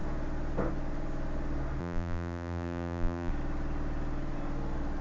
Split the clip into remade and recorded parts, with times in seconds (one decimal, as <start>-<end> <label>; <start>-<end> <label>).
0.0-1.8 recorded; 1.8-3.3 remade; 3.3-5.0 recorded